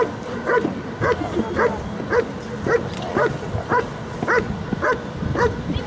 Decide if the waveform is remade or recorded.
recorded